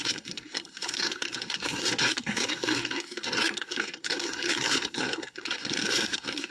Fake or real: fake